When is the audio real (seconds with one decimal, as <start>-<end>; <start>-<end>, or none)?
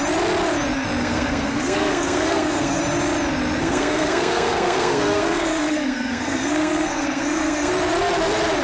0.0-1.0; 2.8-3.6; 7.7-8.6